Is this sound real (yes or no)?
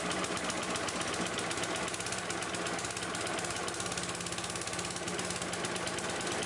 yes